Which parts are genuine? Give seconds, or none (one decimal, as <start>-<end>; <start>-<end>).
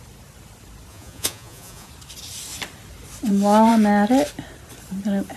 0.0-0.9; 1.9-5.4